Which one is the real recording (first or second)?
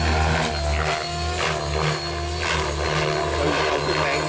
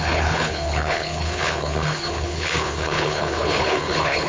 first